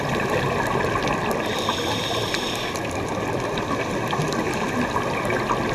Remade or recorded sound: recorded